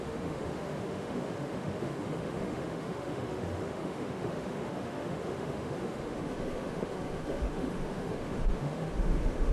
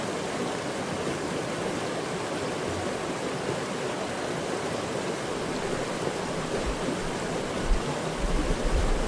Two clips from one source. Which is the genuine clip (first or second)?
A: second